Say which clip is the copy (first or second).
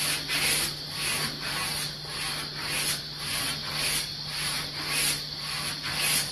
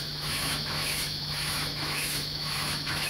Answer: second